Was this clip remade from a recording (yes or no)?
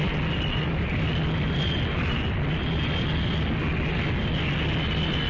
no